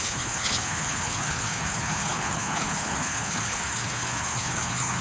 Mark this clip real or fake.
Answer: fake